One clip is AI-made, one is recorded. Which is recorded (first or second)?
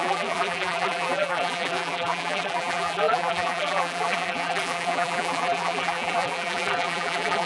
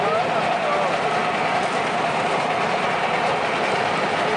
second